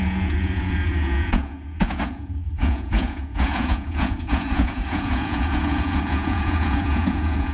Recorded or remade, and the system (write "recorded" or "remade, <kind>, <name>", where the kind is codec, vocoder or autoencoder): remade, vocoder, Vocos